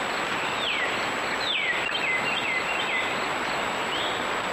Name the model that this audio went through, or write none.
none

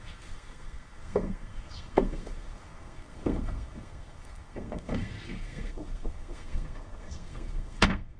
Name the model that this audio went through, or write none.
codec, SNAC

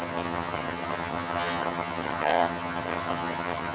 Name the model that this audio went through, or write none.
vocoder, HiFi-GAN